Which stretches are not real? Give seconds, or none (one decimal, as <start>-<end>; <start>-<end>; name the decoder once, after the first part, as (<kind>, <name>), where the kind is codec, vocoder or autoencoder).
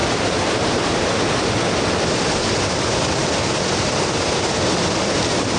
0.0-1.4 (vocoder, BigVGAN v2)